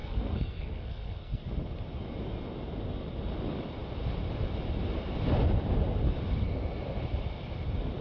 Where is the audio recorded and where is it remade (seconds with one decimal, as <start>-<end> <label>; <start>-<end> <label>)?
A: 0.0-1.4 remade; 1.4-8.0 recorded